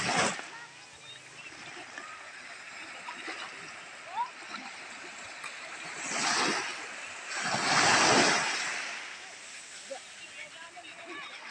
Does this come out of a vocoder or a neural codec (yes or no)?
no